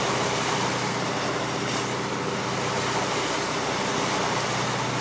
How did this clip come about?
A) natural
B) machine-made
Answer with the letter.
A